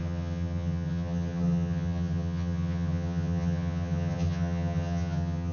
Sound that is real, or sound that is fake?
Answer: fake